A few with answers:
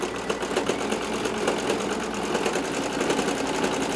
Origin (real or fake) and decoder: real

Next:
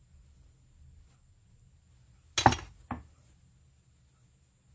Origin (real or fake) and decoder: real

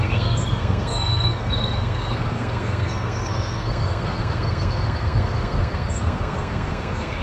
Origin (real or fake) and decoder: fake, codec, SNAC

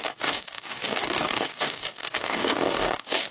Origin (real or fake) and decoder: fake, codec, DAC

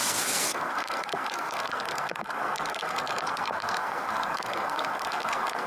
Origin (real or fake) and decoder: fake, codec, SNAC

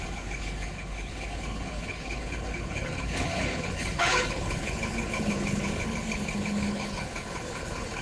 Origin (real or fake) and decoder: fake, codec, HILCodec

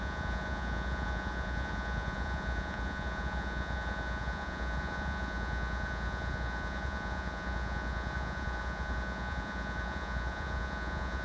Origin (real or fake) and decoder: fake, vocoder, Vocos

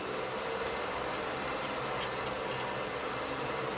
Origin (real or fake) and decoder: real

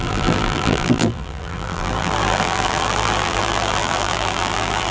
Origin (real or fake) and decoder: fake, vocoder, BigVGAN v2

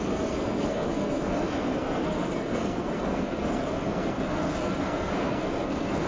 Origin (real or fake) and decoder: fake, codec, SNAC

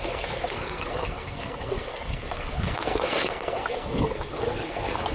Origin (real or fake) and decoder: fake, codec, SNAC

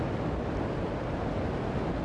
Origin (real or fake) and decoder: real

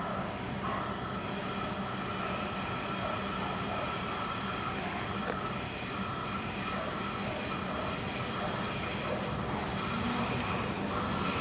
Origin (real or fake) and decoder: real